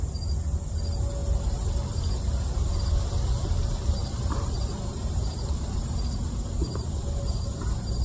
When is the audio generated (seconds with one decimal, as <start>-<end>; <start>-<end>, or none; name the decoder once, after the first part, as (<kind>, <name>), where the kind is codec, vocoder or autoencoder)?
4.0-6.0 (vocoder, BigVGAN v2)